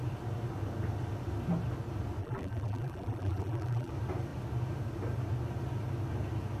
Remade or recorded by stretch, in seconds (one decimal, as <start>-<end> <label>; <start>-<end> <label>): 0.0-2.2 recorded; 2.2-3.9 remade; 3.9-6.6 recorded